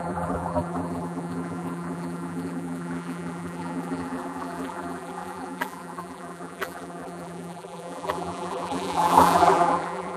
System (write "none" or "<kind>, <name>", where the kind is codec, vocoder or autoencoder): vocoder, BigVGAN v2